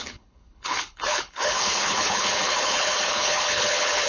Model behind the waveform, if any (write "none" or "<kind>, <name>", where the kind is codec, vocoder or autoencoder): codec, HILCodec